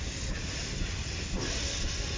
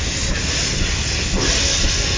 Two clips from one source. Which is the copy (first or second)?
first